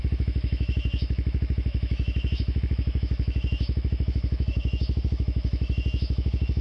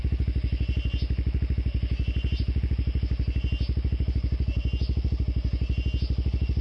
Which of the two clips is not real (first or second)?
first